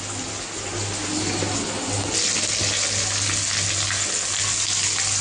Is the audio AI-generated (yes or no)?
no